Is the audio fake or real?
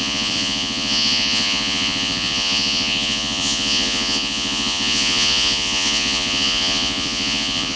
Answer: fake